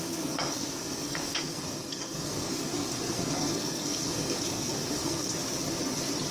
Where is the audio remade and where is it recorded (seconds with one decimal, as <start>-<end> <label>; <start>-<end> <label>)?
0.0-5.3 remade; 5.3-6.3 recorded